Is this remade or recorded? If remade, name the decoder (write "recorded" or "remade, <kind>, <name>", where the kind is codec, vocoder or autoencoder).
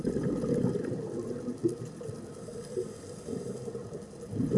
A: recorded